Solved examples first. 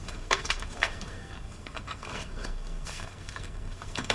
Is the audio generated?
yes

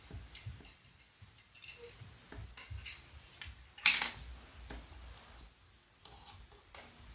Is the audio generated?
no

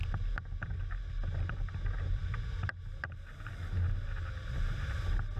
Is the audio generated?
no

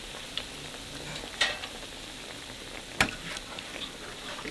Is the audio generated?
no